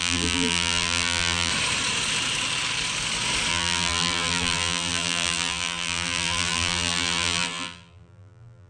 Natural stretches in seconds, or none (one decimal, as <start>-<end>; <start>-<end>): 1.5-3.5